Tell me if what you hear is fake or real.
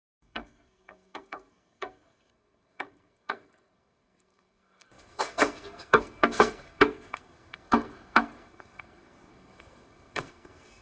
fake